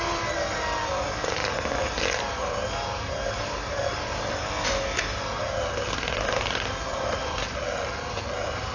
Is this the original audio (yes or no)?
yes